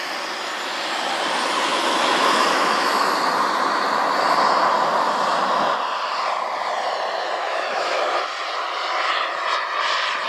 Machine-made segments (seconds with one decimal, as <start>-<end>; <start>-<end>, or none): 1.7-3.1; 7.4-8.0